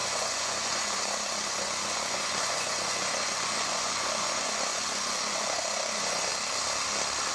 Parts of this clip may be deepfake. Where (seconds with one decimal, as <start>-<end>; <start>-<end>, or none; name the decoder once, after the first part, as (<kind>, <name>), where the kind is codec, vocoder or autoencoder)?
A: 0.0-6.3 (vocoder, Vocos)